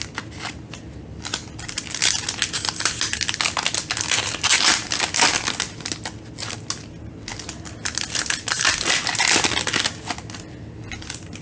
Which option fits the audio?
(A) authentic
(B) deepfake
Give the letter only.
A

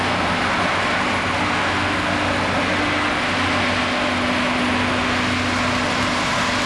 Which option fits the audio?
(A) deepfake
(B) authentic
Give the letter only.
B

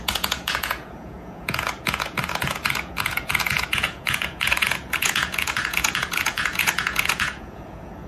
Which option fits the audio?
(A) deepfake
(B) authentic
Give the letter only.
A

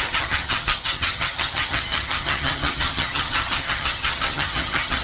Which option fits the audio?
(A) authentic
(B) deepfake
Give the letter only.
B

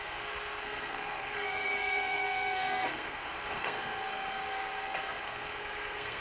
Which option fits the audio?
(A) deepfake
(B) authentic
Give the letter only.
A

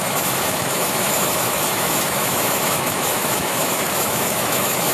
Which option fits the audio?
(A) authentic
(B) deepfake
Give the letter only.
B